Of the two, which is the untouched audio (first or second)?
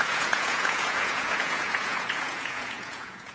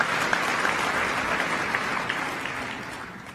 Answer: second